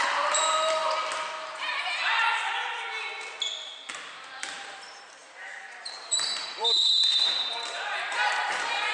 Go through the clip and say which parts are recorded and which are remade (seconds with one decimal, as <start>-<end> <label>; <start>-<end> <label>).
0.0-0.8 remade; 0.8-1.6 recorded; 1.6-2.3 remade; 2.3-3.9 recorded; 3.9-8.9 remade